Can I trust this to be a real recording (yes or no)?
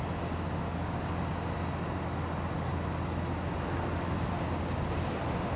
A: yes